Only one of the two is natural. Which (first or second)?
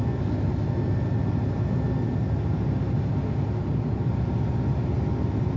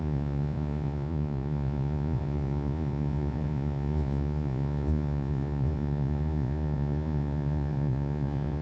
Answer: first